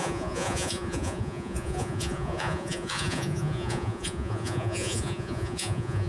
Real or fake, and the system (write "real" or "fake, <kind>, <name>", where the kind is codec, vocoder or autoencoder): fake, vocoder, Vocos